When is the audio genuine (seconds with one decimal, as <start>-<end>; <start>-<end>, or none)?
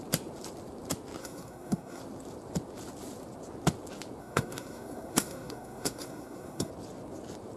0.0-1.2; 2.0-4.2; 6.7-7.6